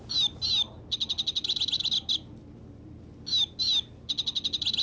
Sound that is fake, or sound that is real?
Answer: real